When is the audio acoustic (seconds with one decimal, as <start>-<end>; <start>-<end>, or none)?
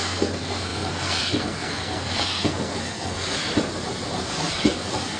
3.4-4.2